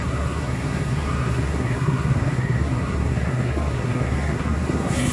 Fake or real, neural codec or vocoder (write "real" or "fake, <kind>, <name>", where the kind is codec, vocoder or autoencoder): fake, codec, SNAC